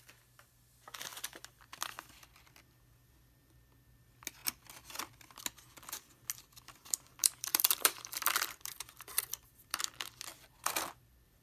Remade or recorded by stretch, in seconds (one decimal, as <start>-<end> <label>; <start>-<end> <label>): 0.0-1.1 recorded; 1.1-2.5 remade; 2.5-4.4 recorded; 4.4-5.4 remade; 5.4-7.2 recorded; 7.2-11.0 remade; 11.0-11.4 recorded